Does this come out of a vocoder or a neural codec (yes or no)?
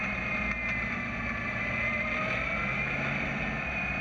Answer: no